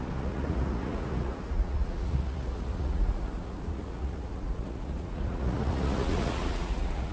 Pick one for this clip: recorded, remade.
remade